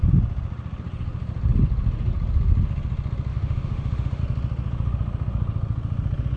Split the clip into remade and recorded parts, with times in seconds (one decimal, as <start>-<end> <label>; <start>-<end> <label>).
0.0-3.3 recorded; 3.3-4.2 remade; 4.2-6.4 recorded